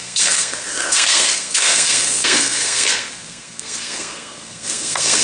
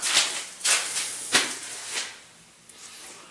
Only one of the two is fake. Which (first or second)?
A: first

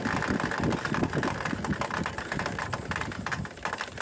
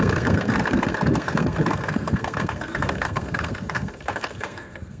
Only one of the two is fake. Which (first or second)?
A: second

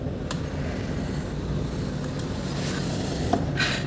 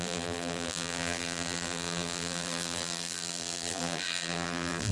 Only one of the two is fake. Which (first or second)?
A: second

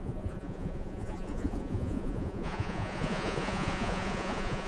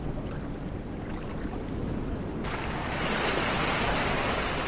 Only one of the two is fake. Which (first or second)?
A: first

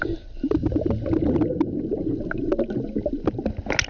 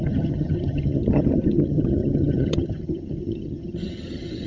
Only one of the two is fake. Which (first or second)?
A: second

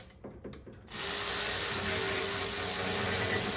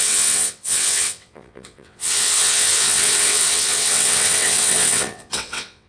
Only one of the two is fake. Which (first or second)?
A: second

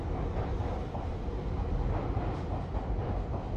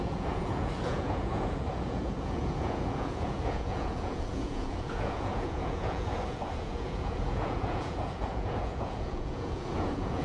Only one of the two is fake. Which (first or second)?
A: second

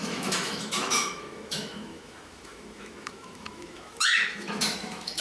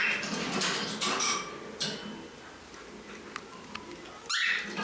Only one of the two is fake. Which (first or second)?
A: first